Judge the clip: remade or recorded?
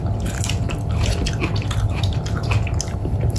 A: recorded